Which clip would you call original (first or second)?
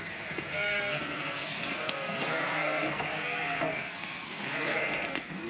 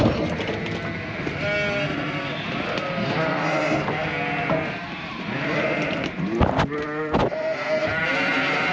second